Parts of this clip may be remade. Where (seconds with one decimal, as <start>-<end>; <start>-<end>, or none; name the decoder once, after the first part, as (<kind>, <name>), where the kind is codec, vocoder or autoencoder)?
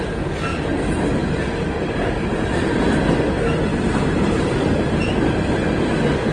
0.5-2.8 (vocoder, BigVGAN v2); 3.7-4.4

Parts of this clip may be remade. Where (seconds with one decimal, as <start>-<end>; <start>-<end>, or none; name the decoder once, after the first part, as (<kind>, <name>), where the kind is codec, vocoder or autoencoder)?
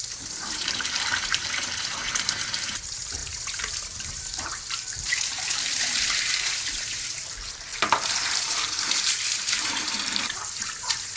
0.0-11.2 (vocoder, BigVGAN v2)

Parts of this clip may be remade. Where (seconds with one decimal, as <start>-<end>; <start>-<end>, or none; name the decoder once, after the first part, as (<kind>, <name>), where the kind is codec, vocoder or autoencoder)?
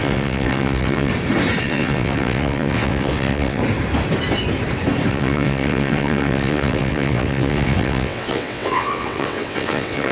0.0-1.1 (vocoder, WaveNeXt); 1.6-3.6; 5.1-10.1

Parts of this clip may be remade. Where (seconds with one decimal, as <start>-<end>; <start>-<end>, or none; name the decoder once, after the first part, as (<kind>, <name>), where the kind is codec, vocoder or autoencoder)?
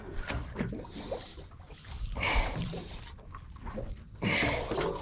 1.3-4.3 (vocoder, BigVGAN v2)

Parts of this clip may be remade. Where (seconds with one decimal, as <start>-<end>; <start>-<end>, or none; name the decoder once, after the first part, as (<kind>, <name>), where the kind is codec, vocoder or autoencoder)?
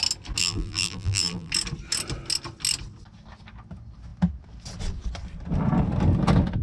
0.4-1.5 (vocoder, BigVGAN v2)